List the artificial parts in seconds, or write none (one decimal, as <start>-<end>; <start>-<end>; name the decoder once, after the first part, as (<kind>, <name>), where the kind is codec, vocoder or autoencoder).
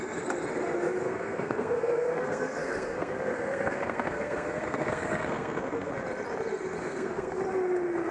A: 1.0-5.9 (codec, SNAC); 6.8-7.4